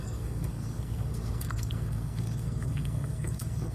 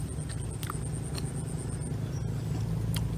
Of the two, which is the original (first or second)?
second